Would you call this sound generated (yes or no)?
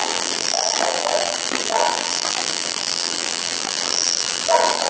yes